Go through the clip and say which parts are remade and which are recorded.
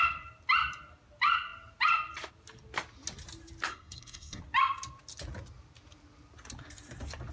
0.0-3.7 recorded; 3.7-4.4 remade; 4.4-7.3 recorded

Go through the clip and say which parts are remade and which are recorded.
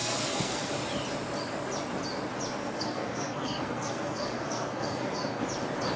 0.0-0.7 remade; 0.7-2.6 recorded; 2.6-5.4 remade; 5.4-6.0 recorded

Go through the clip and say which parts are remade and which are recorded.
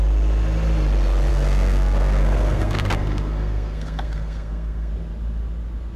0.0-1.3 recorded; 1.3-4.9 remade; 4.9-6.0 recorded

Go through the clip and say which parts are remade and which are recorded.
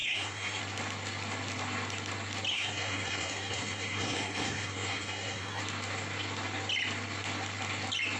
0.0-0.6 remade; 0.6-2.5 recorded; 2.5-5.6 remade; 5.6-8.2 recorded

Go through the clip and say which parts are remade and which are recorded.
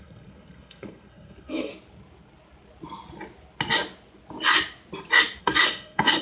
0.0-1.7 remade; 1.7-5.4 recorded; 5.4-6.2 remade